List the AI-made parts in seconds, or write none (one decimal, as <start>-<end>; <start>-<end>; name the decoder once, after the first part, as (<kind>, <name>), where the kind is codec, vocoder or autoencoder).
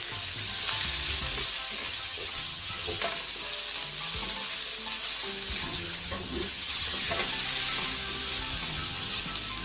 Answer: 1.8-3.0 (vocoder, HiFi-GAN); 5.6-7.2; 8.7-9.2